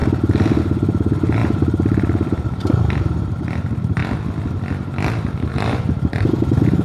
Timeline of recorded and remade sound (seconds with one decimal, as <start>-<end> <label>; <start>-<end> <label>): 0.0-0.6 recorded; 0.6-4.0 remade; 4.0-5.5 recorded; 5.5-6.8 remade